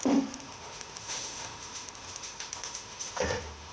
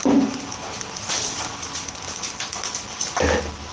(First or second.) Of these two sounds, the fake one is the first